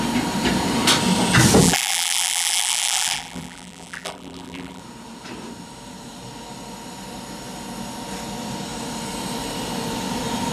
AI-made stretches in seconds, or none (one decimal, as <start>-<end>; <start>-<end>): 1.6-4.8

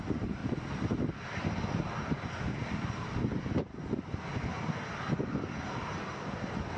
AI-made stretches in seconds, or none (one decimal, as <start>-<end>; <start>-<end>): none

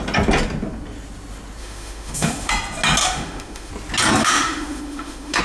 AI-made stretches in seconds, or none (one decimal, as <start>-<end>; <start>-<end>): 1.6-2.5; 3.0-3.7; 4.2-5.4

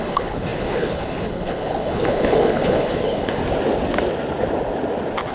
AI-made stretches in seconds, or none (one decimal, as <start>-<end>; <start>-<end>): 0.0-3.4